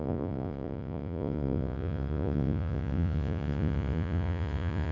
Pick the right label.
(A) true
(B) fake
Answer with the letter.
B